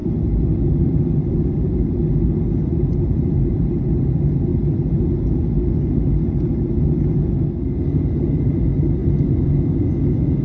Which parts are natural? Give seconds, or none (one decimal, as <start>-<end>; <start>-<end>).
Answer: 2.1-9.0; 9.9-10.4